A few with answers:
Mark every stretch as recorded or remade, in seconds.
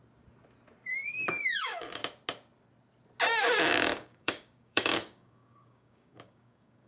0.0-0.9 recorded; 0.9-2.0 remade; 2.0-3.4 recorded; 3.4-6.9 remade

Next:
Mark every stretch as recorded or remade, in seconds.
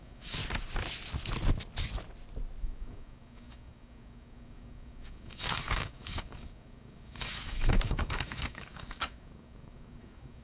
0.0-0.4 remade; 0.4-2.6 recorded; 2.6-10.4 remade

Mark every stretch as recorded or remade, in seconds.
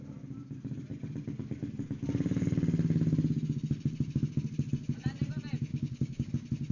0.0-5.7 recorded; 5.7-6.3 remade; 6.3-6.7 recorded